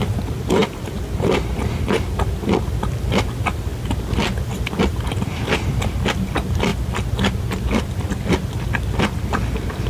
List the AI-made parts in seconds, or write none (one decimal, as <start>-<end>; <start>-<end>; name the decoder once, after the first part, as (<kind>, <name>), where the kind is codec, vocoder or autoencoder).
none